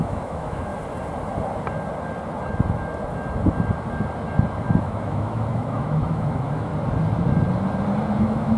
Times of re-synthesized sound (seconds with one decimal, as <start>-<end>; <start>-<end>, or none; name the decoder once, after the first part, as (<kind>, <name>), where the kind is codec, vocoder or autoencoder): 0.0-0.7 (autoencoder, DAC-VAE); 4.8-6.7; 8.2-8.6